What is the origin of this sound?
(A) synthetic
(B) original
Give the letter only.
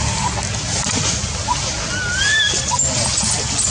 B